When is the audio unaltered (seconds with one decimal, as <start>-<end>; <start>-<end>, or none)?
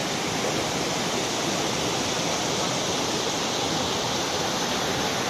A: 0.0-5.3